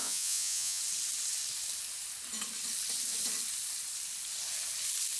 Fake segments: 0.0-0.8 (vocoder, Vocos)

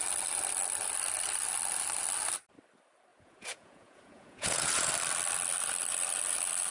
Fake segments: 3.1-4.9 (vocoder, Vocos)